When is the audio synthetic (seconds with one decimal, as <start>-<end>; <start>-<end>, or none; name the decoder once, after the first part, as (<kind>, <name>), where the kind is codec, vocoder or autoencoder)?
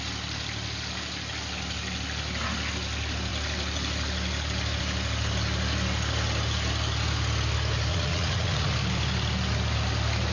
7.9-8.7 (vocoder, Vocos)